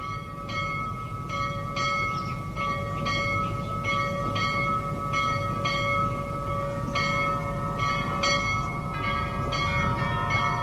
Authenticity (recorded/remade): recorded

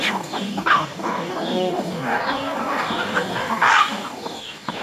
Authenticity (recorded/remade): remade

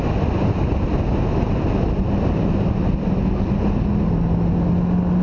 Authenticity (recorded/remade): recorded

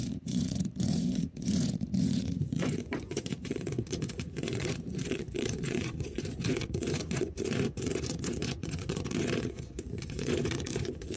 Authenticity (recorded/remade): remade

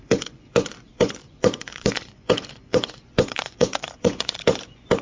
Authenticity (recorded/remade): remade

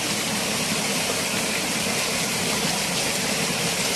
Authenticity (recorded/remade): recorded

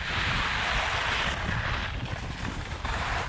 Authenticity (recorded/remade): recorded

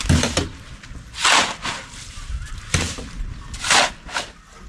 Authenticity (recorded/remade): recorded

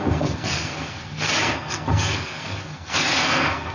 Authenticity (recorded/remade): remade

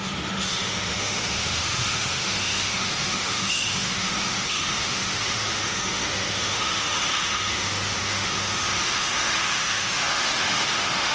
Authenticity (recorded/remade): remade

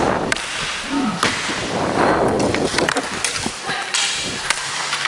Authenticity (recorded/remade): recorded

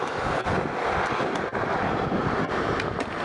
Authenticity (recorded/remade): recorded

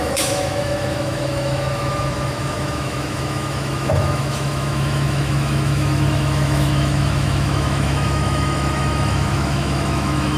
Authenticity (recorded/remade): remade